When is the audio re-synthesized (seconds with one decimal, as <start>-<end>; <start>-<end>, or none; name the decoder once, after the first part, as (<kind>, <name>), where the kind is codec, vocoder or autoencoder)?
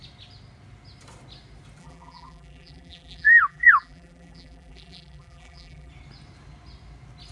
1.8-5.9 (vocoder, BigVGAN v2)